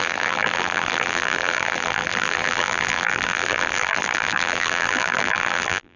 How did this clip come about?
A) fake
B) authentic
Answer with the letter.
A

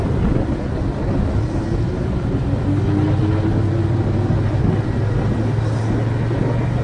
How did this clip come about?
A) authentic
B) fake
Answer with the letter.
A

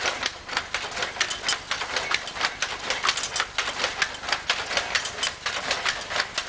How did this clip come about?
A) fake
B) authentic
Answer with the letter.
B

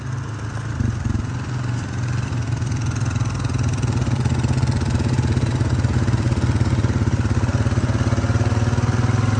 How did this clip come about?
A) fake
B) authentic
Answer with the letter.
B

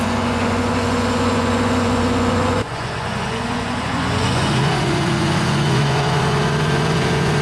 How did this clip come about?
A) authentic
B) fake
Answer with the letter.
B